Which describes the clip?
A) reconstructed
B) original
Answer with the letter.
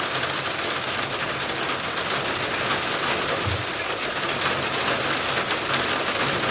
B